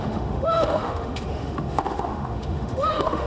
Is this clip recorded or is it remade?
remade